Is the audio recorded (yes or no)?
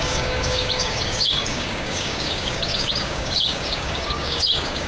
no